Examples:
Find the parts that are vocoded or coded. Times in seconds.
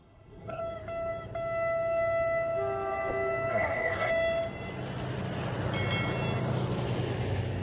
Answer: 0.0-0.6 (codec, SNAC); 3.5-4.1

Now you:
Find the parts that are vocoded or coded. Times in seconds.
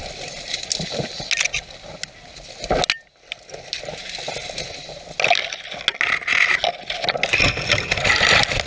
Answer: none